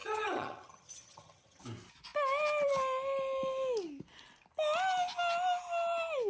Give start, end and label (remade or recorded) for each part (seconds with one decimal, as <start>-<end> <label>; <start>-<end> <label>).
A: 0.0-1.6 remade; 1.6-6.3 recorded